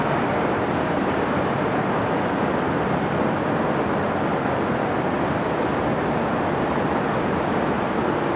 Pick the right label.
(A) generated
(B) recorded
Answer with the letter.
B